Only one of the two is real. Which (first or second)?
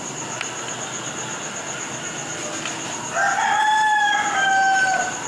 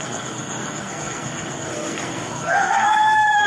first